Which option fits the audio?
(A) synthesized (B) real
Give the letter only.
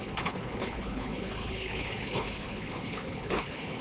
A